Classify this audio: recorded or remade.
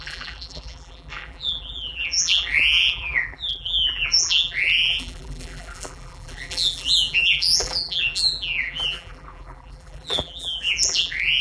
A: remade